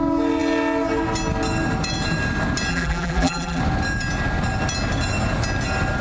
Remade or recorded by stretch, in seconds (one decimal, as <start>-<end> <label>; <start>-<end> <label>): 0.0-2.7 recorded; 2.7-3.6 remade; 3.6-6.0 recorded